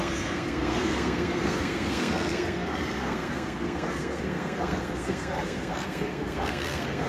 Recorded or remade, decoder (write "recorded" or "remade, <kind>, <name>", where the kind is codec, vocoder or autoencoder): remade, codec, SNAC